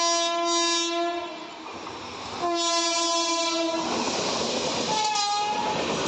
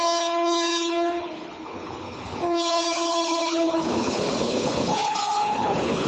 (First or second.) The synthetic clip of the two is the second